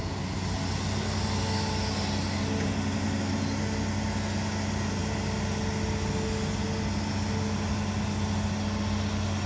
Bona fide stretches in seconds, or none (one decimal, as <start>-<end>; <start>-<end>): 0.0-9.5